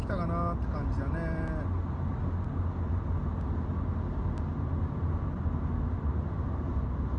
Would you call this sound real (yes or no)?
yes